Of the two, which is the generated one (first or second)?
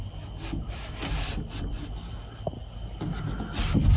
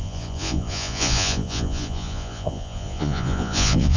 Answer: second